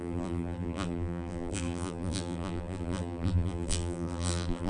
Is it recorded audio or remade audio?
remade